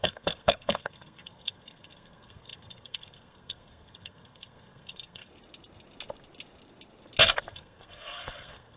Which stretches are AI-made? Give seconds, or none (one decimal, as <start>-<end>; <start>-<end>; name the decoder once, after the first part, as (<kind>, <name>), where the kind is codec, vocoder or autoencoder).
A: 0.0-5.3 (codec, SNAC); 7.5-8.8